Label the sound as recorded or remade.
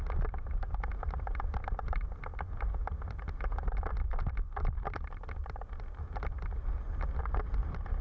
remade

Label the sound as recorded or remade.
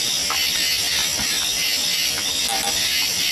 recorded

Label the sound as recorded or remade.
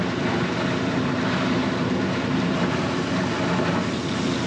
recorded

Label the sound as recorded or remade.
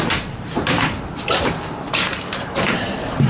remade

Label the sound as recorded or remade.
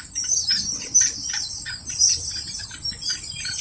remade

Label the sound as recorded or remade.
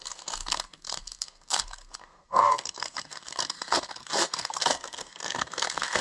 remade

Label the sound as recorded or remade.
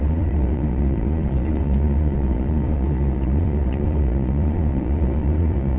remade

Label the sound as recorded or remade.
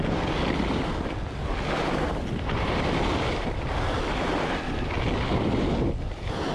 recorded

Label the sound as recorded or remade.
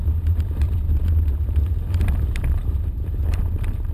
remade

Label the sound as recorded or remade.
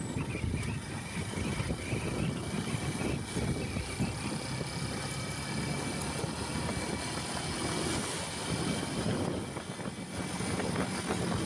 recorded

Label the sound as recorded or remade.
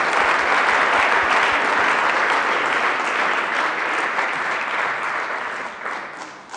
recorded